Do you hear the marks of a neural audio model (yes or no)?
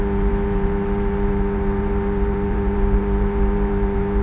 yes